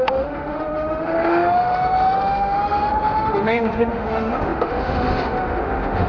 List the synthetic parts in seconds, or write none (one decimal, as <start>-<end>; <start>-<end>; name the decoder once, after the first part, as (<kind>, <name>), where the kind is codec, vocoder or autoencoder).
0.0-6.1 (autoencoder, DAC-VAE)